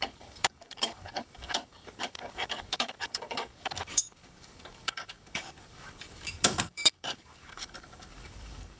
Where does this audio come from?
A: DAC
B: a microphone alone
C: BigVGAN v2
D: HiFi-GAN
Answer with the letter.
A